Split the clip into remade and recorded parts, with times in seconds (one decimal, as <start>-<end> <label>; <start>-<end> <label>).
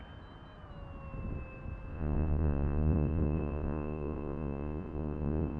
0.0-1.9 recorded; 1.9-5.6 remade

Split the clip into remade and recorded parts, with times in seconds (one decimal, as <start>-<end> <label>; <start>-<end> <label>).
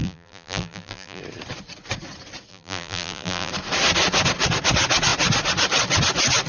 0.0-1.2 remade; 1.2-2.5 recorded; 2.5-3.5 remade; 3.5-6.5 recorded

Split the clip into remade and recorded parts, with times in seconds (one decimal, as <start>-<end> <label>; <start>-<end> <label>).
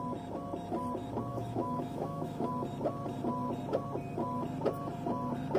0.0-1.3 recorded; 1.3-2.5 remade; 2.5-5.6 recorded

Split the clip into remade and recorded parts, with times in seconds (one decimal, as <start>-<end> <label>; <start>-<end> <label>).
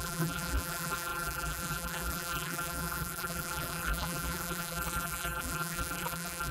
0.0-6.5 remade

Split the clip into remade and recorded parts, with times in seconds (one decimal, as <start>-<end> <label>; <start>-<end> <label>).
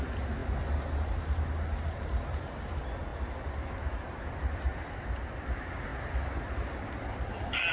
0.0-7.7 recorded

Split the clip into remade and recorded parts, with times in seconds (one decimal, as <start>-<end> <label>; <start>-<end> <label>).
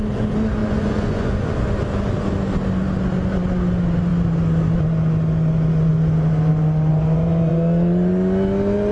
0.0-0.6 recorded; 0.6-1.8 remade; 1.8-6.9 recorded; 6.9-7.5 remade; 7.5-8.9 recorded